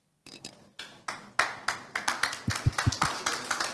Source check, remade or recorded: recorded